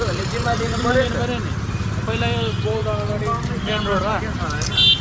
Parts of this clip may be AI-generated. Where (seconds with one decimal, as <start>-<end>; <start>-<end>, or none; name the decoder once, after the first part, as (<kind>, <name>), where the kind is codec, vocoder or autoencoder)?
0.0-1.1 (vocoder, BigVGAN v2)